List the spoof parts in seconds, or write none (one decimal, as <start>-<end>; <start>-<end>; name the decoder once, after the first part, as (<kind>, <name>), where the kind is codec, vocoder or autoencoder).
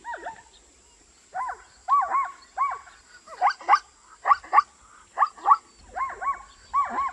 none